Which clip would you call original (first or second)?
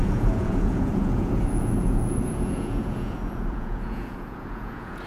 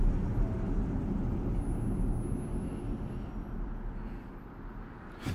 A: second